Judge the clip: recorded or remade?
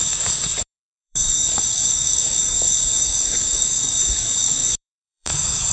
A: remade